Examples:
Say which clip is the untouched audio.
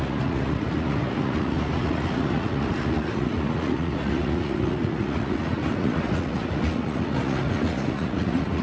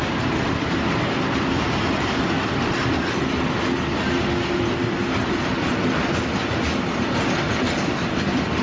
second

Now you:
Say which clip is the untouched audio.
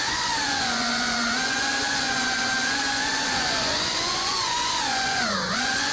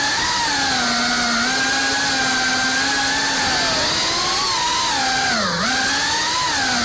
second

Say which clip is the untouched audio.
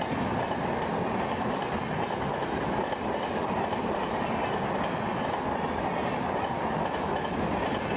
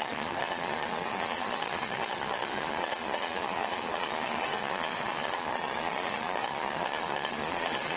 first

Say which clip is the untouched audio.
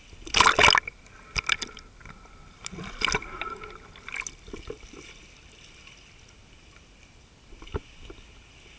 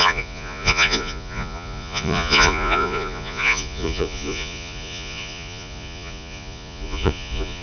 first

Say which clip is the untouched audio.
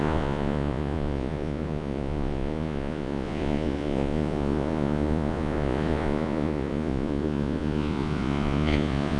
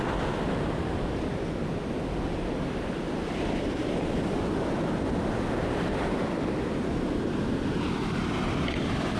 second